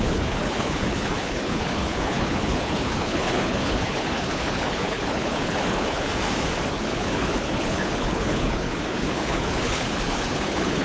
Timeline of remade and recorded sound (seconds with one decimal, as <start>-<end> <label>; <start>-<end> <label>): 0.0-6.1 remade; 6.1-6.7 recorded; 6.7-10.8 remade